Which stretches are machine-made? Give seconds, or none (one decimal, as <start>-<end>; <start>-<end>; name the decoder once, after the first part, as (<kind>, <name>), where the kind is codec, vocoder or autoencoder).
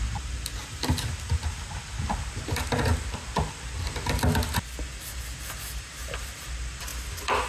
none